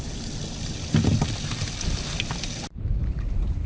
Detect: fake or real real